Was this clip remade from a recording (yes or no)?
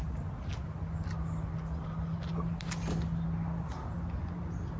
no